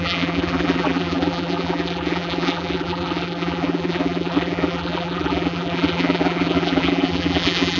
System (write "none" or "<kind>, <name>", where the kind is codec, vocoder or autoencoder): vocoder, BigVGAN v2